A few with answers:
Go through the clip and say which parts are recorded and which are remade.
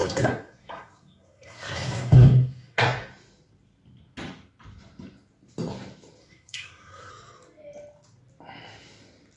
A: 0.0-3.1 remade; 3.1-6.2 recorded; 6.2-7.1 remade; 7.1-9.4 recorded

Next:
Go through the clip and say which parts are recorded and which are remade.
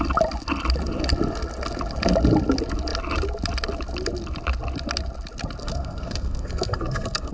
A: 0.0-5.6 recorded; 5.6-7.3 remade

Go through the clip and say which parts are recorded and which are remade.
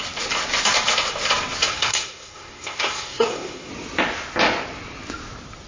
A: 0.0-1.7 recorded; 1.7-3.7 remade; 3.7-5.7 recorded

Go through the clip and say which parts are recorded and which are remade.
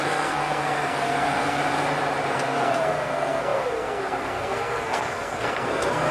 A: 0.0-1.6 remade; 1.6-2.3 recorded; 2.3-6.1 remade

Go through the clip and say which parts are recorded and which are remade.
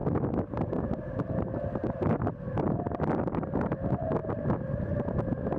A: 0.0-5.6 recorded